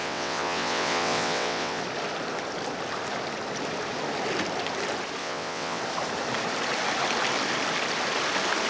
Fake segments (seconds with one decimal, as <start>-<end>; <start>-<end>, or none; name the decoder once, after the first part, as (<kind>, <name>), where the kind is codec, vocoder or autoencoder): 0.0-1.8 (vocoder, WaveNeXt); 5.2-5.8